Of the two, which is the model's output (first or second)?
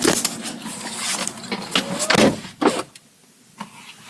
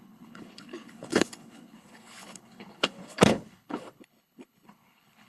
second